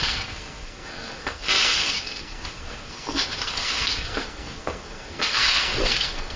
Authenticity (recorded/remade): remade